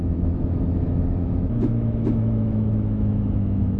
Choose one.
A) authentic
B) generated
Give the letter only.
B